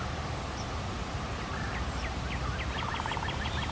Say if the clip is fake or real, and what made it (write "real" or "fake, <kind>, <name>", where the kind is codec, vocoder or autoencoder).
real